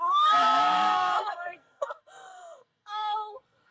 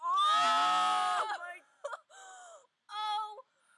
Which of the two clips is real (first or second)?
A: second